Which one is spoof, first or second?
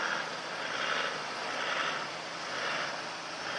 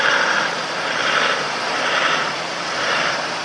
second